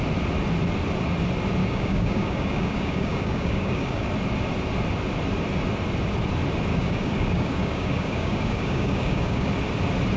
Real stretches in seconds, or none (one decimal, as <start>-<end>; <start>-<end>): 0.0-1.6; 4.1-6.7; 9.5-10.2

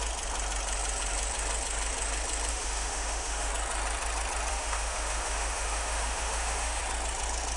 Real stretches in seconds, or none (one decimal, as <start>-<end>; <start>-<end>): 0.0-2.5; 3.5-4.5; 6.8-7.6